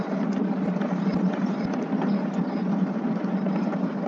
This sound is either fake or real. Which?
real